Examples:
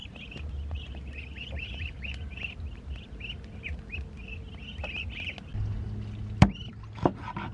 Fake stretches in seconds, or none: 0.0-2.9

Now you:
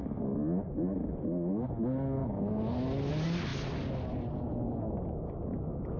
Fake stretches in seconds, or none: none